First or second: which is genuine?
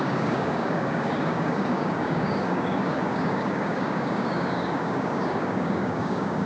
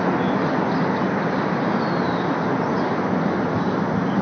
second